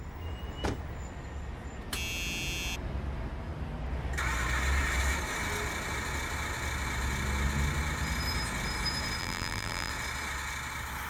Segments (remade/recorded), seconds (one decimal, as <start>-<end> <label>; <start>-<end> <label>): 0.0-9.2 recorded; 9.2-9.9 remade; 9.9-11.1 recorded